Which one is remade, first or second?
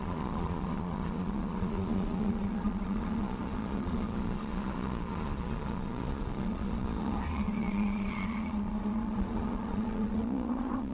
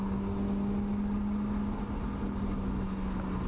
first